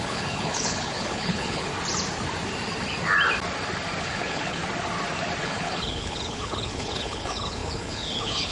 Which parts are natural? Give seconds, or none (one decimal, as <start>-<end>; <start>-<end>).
1.7-4.0; 4.6-5.4